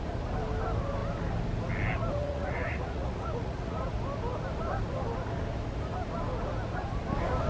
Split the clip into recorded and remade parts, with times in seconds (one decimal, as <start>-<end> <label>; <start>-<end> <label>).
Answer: 0.0-2.2 recorded; 2.2-3.9 remade; 3.9-7.5 recorded